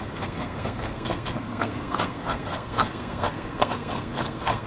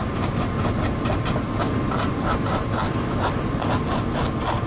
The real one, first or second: second